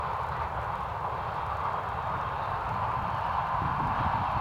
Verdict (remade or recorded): remade